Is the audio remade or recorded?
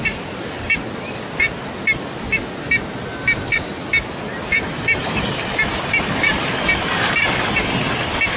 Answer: recorded